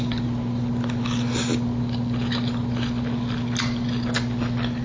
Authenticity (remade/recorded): recorded